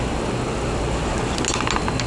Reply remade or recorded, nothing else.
recorded